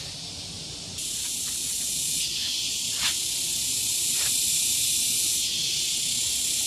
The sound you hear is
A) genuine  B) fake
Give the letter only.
A